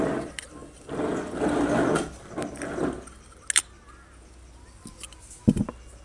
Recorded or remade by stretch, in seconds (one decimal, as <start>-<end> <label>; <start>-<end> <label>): 0.0-6.0 recorded